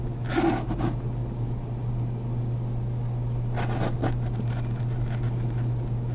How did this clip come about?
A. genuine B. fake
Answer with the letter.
A